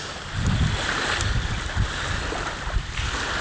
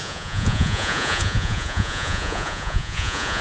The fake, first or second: second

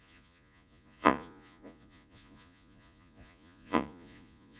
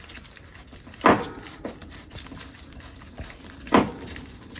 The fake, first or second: first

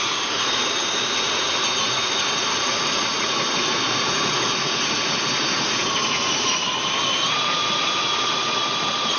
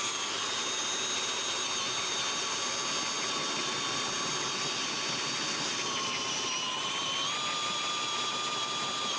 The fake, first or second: first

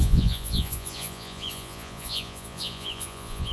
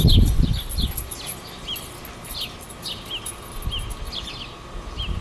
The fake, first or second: first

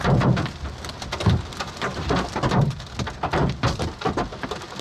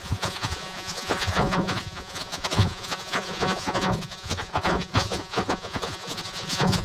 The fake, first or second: second